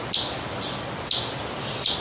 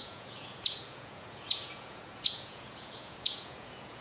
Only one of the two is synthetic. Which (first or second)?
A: second